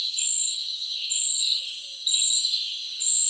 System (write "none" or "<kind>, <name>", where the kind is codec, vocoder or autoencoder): none